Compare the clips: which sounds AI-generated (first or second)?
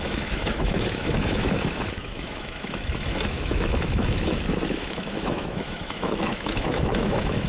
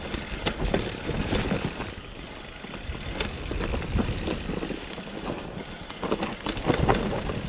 first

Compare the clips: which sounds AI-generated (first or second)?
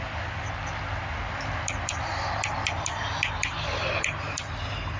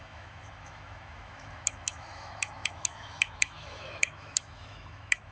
second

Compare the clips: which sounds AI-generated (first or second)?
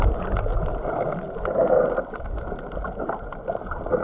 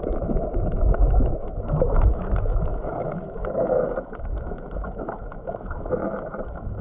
second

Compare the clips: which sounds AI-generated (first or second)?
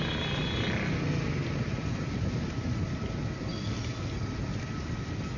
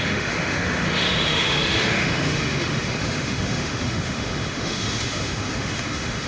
second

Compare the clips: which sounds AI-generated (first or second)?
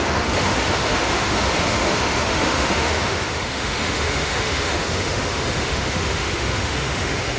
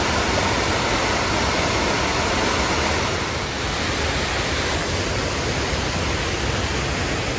first